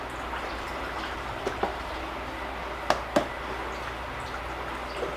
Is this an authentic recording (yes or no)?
yes